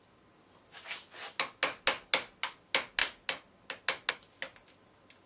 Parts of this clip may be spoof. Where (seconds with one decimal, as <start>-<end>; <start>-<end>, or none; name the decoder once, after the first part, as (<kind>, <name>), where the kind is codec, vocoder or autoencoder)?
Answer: none